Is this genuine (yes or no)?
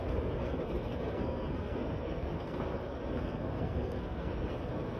no